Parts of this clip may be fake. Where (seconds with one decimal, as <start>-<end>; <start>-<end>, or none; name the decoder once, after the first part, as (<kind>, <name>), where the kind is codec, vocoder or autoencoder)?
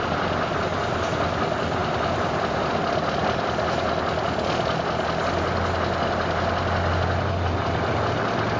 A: none